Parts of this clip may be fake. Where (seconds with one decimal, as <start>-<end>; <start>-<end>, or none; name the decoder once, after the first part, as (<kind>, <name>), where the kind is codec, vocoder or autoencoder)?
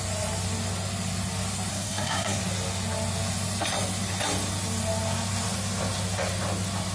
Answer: 1.7-2.4 (codec, SNAC)